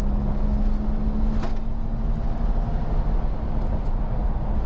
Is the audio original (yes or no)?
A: yes